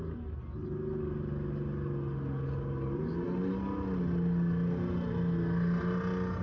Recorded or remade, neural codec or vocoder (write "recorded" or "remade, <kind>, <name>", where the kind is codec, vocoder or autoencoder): recorded